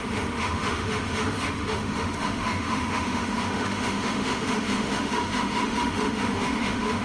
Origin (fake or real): fake